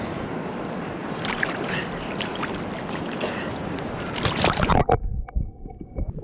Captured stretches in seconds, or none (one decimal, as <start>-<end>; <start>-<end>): 0.0-6.2